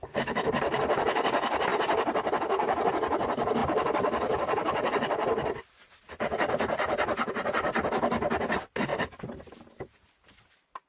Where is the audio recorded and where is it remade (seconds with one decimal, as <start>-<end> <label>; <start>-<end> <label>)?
0.0-1.0 remade; 1.0-3.6 recorded; 3.6-7.3 remade; 7.3-8.9 recorded; 8.9-10.4 remade; 10.4-10.9 recorded